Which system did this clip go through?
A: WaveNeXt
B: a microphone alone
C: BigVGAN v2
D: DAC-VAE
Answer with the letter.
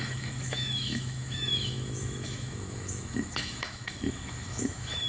D